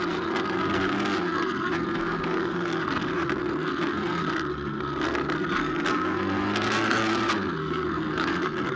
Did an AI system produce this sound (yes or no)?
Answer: yes